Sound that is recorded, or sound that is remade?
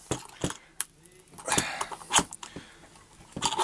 recorded